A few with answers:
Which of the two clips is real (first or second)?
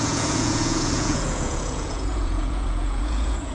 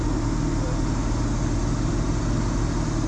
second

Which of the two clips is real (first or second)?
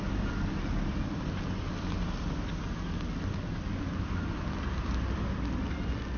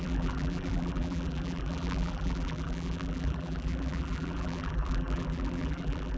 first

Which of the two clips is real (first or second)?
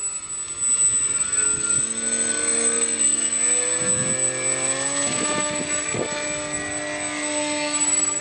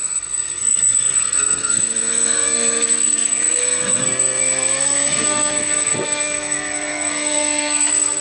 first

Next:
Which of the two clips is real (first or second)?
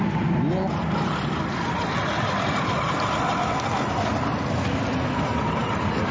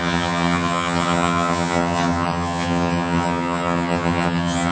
first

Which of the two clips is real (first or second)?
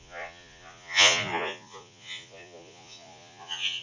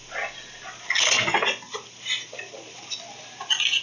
second